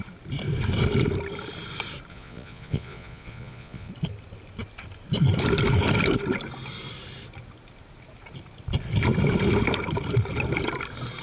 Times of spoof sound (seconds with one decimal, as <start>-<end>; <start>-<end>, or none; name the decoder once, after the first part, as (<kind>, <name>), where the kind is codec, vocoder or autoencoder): 2.1-3.9 (vocoder, Vocos)